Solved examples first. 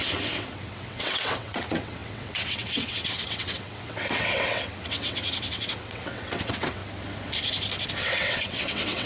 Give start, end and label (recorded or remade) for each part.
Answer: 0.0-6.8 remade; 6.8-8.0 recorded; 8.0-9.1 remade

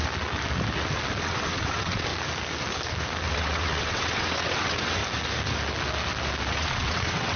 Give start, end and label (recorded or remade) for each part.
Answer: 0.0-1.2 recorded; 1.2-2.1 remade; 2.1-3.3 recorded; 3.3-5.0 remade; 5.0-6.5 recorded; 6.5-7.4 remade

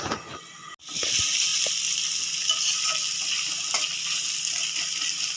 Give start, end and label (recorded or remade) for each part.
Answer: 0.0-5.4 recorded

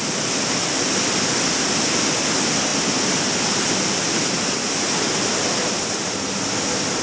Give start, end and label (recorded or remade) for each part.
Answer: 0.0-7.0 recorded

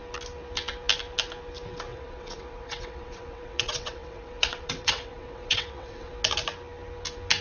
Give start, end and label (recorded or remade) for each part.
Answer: 0.0-1.9 recorded; 1.9-6.1 remade; 6.1-7.4 recorded